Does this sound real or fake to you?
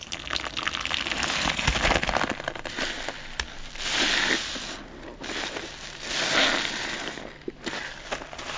real